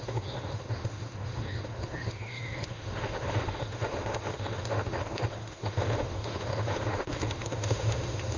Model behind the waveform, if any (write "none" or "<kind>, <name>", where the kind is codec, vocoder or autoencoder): autoencoder, DAC-VAE